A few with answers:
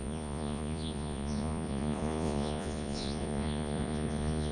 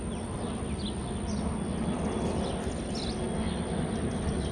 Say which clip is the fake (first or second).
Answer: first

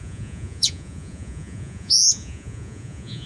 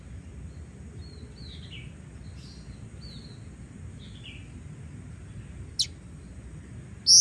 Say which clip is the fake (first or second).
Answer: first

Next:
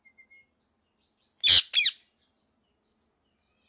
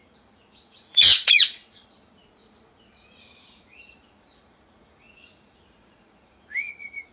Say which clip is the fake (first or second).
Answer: second